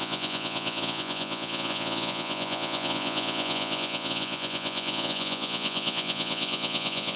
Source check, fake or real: fake